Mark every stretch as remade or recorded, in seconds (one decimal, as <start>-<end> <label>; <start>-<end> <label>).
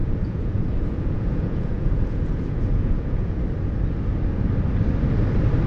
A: 0.0-3.4 remade; 3.4-5.7 recorded